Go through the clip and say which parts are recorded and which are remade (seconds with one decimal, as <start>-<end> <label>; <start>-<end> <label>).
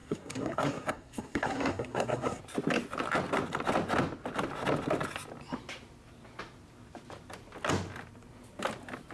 0.0-2.4 remade; 2.4-9.1 recorded